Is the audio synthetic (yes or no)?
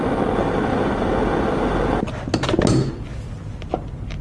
no